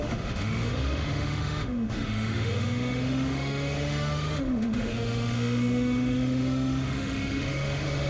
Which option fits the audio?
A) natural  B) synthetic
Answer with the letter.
B